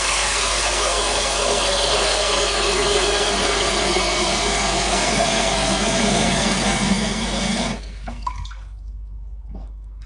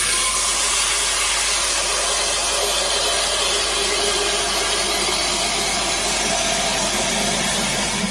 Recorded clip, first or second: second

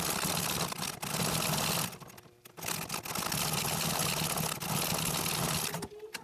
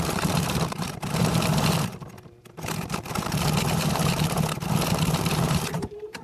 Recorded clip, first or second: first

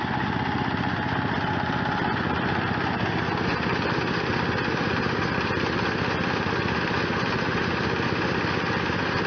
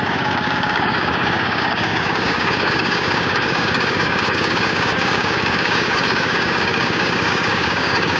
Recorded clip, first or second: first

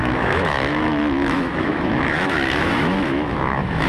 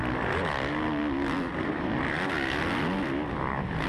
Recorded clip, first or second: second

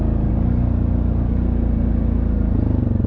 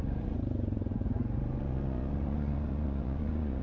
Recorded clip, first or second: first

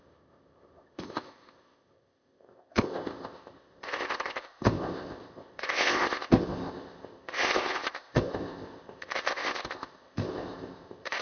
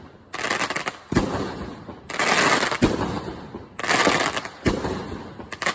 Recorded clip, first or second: second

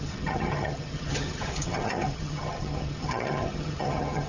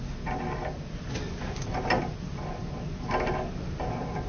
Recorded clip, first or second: second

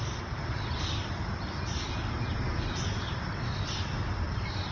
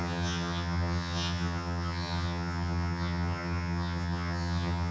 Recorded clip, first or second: first